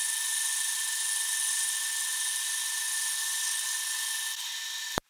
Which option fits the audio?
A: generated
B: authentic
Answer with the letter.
B